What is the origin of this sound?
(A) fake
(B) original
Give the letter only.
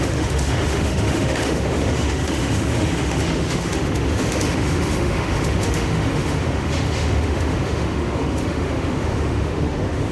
A